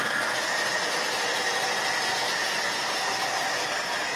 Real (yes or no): yes